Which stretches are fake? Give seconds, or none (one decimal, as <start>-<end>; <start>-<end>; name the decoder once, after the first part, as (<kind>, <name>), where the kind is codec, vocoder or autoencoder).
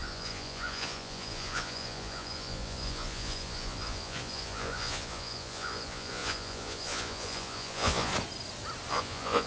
0.0-8.1 (vocoder, Vocos); 8.9-9.5